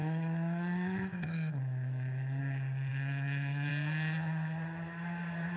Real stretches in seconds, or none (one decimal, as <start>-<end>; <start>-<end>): 2.4-2.9; 3.7-5.6

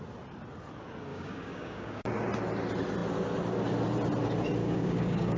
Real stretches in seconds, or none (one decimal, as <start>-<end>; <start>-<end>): 0.0-1.1; 2.1-4.6